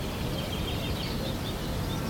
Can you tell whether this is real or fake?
real